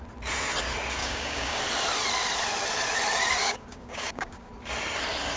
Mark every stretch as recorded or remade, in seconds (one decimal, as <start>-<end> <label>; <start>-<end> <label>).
0.0-1.0 recorded; 1.0-1.6 remade; 1.6-3.4 recorded; 3.4-4.5 remade; 4.5-5.4 recorded